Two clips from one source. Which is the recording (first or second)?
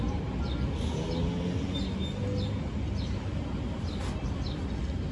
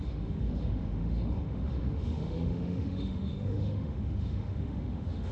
first